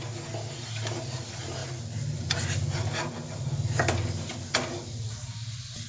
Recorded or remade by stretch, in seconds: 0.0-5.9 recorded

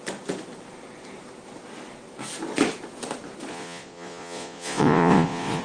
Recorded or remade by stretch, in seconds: 0.0-3.5 recorded; 3.5-5.6 remade

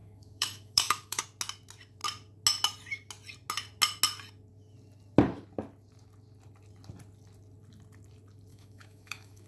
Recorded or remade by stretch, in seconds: 0.0-1.2 remade; 1.2-8.5 recorded; 8.5-9.5 remade